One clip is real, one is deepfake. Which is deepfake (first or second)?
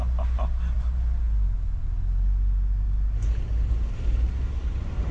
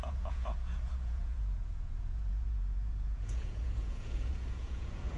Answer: second